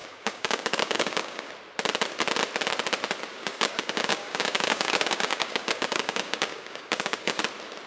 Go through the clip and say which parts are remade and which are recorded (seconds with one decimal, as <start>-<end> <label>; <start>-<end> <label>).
0.0-1.5 remade; 1.5-3.3 recorded; 3.3-7.4 remade; 7.4-7.9 recorded